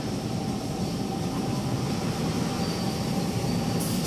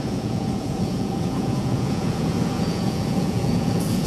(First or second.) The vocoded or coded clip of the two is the second